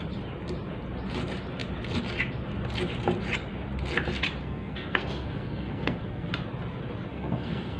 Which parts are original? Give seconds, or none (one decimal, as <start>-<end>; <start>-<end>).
0.0-4.4; 6.3-7.1